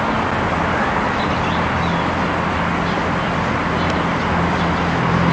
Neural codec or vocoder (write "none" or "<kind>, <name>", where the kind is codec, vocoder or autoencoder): none